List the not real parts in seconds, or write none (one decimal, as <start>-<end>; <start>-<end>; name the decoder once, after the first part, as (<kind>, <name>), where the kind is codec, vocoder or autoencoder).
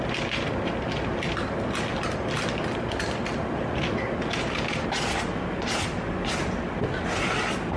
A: none